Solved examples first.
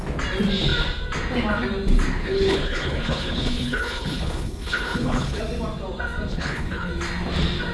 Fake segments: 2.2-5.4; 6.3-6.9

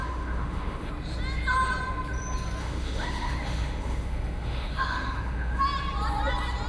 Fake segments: 0.0-0.9; 2.6-5.6

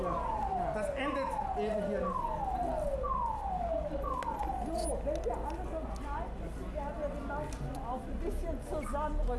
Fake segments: none

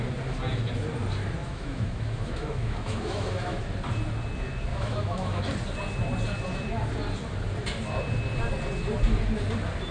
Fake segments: 1.4-3.6; 4.7-5.4

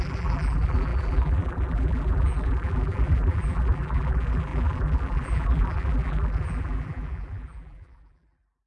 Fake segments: 0.0-8.7

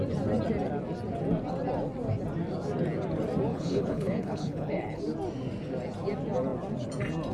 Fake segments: 3.5-5.0